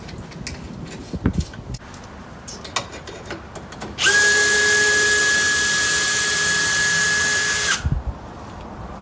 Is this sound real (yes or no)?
yes